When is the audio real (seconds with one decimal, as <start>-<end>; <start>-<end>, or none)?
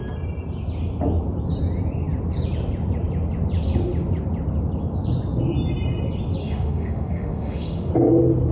0.0-6.4; 7.9-8.5